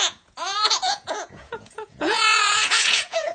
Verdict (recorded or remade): remade